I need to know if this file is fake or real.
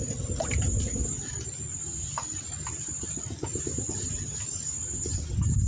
real